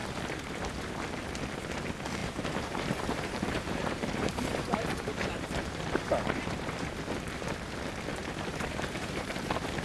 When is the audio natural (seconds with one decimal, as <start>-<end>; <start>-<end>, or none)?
0.0-2.2; 7.0-8.2; 9.4-9.8